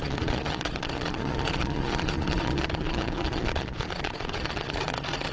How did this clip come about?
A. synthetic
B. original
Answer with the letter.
A